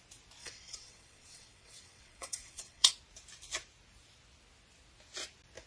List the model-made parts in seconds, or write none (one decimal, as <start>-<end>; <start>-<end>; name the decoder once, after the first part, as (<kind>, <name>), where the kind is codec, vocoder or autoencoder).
0.4-2.9 (vocoder, WaveNeXt)

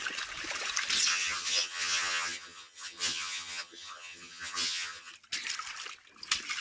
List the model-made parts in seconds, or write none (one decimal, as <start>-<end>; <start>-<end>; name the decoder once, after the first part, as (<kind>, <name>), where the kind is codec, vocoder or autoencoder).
1.1-5.1 (vocoder, HiFi-GAN)

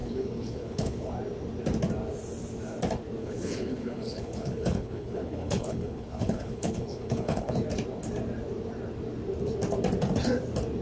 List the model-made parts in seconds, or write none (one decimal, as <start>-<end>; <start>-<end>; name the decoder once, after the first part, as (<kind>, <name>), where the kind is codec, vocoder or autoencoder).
0.0-1.1 (codec, HILCodec); 3.2-7.5

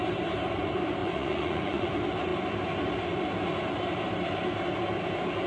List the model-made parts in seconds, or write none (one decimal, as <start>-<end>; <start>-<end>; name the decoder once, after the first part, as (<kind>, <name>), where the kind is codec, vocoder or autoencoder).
1.0-1.9 (vocoder, Vocos)

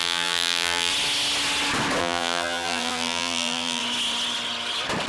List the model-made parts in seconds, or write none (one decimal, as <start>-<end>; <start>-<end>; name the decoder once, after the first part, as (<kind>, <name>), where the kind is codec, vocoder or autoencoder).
0.0-0.9 (vocoder, BigVGAN v2); 2.0-3.8